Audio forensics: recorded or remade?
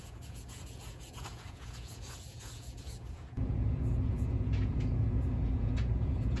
remade